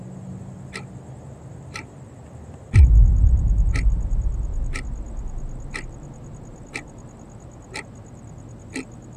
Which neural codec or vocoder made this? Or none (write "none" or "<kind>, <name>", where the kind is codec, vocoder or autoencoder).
none